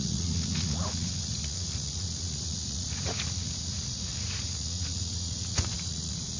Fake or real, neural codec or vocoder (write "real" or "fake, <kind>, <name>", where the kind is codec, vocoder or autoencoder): fake, vocoder, Vocos